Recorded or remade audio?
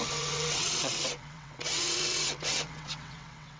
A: remade